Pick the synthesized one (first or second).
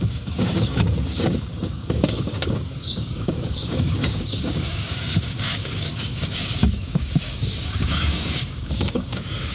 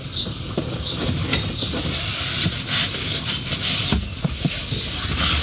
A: first